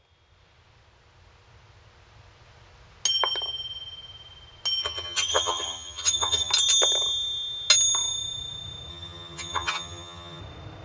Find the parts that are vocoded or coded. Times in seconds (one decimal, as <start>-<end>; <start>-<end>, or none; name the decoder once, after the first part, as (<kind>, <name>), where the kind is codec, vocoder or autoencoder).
4.8-6.5 (vocoder, HiFi-GAN); 8.9-10.4